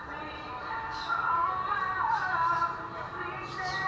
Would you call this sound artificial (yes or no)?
yes